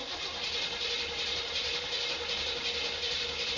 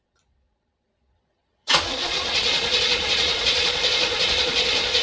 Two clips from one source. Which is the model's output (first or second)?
second